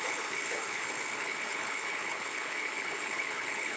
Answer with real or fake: fake